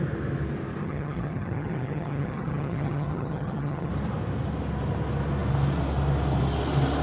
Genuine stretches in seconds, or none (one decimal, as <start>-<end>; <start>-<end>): 0.0-0.8; 3.9-7.0